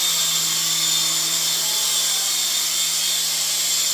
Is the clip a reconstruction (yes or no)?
no